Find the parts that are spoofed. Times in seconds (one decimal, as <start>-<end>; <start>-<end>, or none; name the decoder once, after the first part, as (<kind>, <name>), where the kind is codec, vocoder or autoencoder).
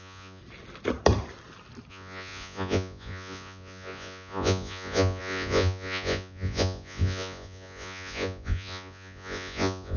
0.0-0.4 (vocoder, Vocos); 1.9-10.0